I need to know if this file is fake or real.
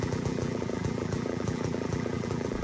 fake